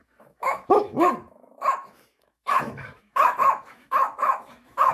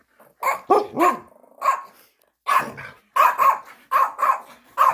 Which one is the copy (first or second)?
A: first